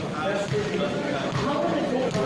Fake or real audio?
real